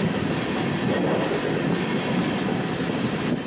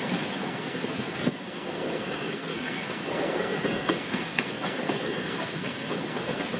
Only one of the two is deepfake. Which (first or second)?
second